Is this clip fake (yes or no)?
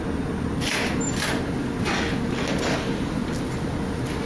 no